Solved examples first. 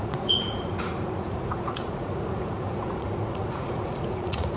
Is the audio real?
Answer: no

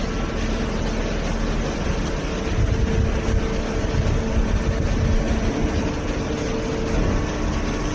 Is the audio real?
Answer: yes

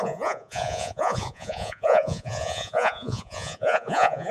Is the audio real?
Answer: no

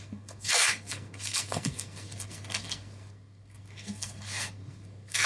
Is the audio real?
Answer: no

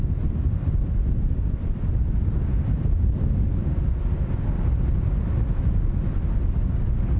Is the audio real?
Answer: yes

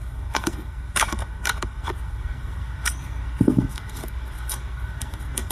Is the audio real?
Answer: no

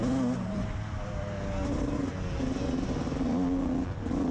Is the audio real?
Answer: yes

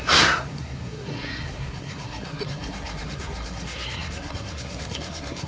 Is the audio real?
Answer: no